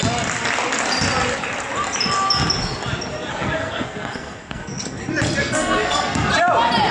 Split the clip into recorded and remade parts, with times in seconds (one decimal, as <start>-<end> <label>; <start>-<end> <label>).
0.0-3.3 recorded; 3.3-5.0 remade; 5.0-5.4 recorded; 5.4-6.3 remade; 6.3-6.9 recorded